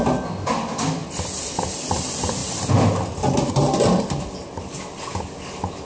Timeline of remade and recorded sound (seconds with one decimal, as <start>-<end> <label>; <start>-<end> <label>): 0.0-5.9 recorded